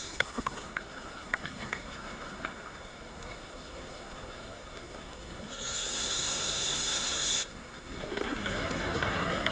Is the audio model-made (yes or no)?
yes